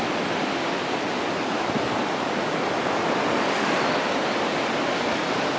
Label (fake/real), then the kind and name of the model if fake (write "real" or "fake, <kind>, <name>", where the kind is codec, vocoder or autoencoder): real